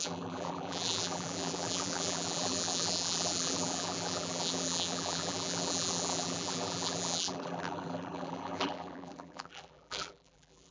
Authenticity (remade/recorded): remade